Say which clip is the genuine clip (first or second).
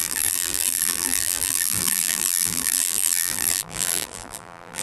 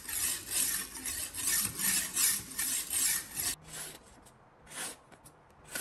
second